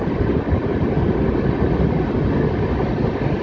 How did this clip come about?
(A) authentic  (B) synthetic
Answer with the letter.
A